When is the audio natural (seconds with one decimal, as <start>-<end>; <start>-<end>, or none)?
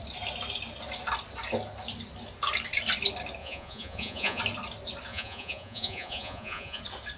0.0-3.4; 4.4-5.1; 6.8-7.2